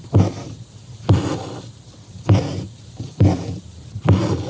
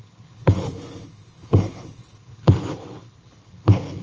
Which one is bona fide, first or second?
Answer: first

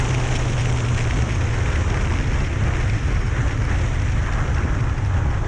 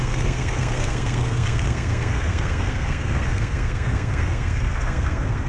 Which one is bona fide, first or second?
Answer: first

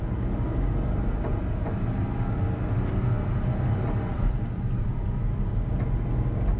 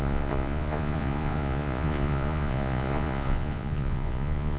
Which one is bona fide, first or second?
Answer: first